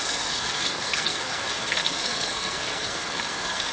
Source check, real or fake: fake